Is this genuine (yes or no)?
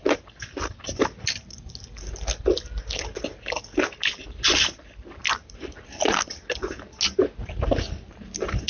yes